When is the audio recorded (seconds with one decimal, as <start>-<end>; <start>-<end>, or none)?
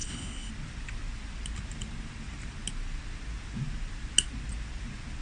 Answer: 0.5-5.2